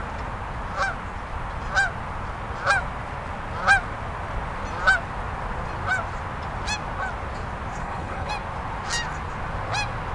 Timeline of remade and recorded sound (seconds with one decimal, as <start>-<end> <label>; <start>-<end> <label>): 0.0-7.8 recorded; 7.8-8.3 remade; 8.3-10.1 recorded